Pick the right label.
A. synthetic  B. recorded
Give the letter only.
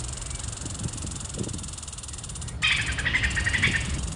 B